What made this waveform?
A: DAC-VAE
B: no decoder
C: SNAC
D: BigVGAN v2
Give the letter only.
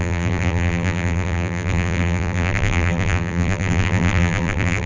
D